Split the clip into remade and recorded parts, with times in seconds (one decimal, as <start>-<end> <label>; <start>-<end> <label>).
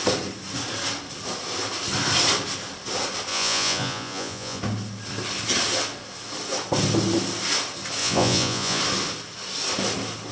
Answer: 0.0-3.3 recorded; 3.3-4.6 remade; 4.6-8.0 recorded; 8.0-8.8 remade; 8.8-10.3 recorded